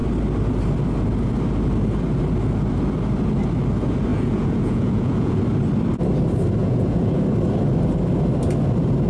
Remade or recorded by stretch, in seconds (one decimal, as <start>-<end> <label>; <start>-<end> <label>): 0.0-4.1 recorded; 4.1-5.4 remade; 5.4-6.6 recorded; 6.6-7.1 remade; 7.1-9.1 recorded